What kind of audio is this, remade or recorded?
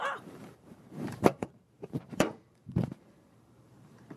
remade